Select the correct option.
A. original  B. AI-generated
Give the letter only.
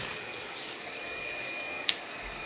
B